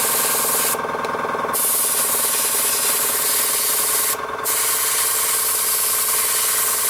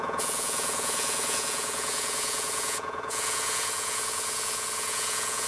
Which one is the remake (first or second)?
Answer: second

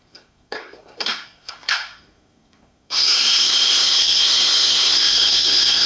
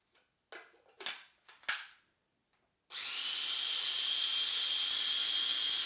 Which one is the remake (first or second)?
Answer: first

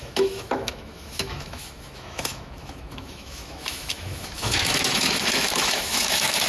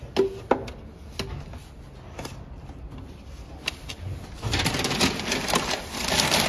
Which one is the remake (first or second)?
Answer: first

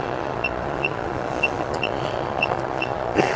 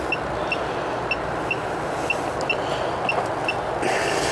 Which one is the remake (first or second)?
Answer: first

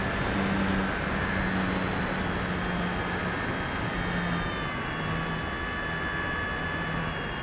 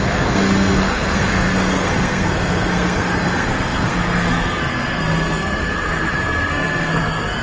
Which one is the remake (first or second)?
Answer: second